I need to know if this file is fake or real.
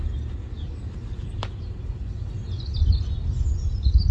real